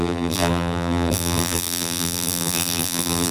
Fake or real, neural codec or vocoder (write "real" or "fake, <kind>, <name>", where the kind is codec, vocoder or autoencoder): fake, vocoder, BigVGAN v2